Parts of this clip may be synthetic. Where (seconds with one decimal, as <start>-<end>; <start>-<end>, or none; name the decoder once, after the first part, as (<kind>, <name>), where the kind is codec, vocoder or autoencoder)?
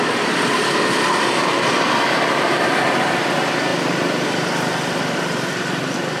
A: 0.0-6.2 (vocoder, BigVGAN v2)